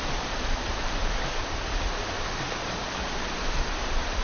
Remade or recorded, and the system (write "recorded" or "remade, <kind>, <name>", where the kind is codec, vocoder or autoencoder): recorded